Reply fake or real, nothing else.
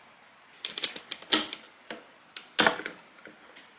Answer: real